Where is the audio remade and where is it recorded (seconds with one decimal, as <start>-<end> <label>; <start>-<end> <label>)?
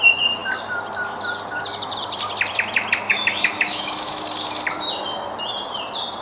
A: 0.0-3.1 recorded; 3.1-4.2 remade; 4.2-6.2 recorded